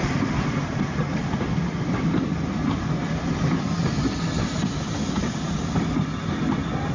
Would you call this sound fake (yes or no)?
no